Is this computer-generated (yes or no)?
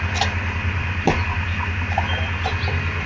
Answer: no